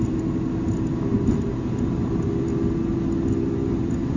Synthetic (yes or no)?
no